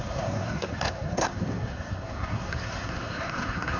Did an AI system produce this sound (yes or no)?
yes